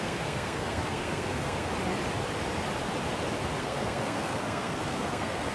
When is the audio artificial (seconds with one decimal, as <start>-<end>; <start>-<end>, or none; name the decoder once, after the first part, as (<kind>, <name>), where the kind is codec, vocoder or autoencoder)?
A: 0.0-1.7 (codec, SNAC); 3.6-5.5